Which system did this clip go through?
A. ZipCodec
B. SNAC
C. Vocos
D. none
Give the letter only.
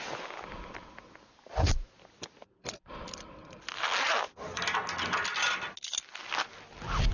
D